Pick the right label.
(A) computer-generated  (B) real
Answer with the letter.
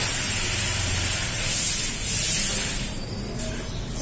B